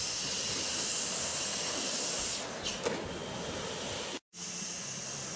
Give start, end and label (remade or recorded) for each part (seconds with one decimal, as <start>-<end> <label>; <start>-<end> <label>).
0.0-5.4 recorded